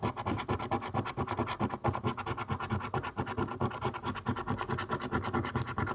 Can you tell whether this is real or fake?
real